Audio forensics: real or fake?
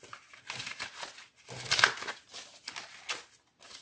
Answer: real